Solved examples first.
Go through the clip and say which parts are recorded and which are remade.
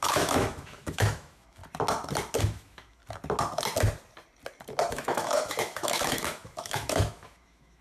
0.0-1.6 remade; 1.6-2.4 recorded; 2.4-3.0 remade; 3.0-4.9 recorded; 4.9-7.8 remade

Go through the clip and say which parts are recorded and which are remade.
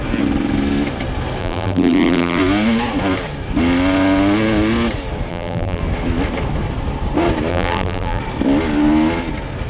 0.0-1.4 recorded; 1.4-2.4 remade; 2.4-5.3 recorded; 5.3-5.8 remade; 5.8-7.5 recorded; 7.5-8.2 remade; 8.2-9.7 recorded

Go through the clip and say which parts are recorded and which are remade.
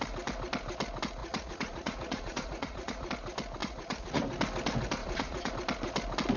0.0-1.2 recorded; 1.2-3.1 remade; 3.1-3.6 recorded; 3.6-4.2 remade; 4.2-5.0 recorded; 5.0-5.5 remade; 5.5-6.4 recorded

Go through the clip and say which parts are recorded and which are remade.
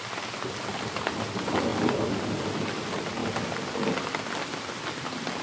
0.0-5.4 recorded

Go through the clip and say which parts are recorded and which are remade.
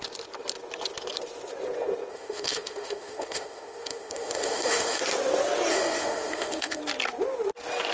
0.0-2.1 recorded; 2.1-5.0 remade; 5.0-5.7 recorded; 5.7-6.8 remade; 6.8-7.9 recorded